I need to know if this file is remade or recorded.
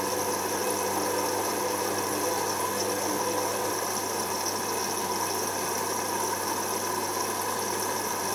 recorded